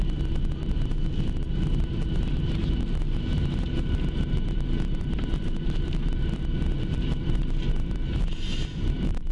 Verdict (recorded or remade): remade